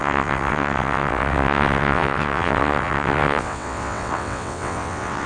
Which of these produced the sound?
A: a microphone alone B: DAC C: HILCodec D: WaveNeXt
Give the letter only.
D